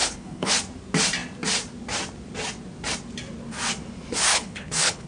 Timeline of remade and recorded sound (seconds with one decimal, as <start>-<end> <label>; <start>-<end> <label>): 0.0-0.5 remade; 0.5-4.3 recorded; 4.3-5.1 remade